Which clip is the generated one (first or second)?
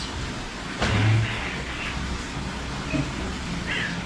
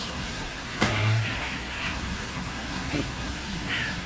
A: second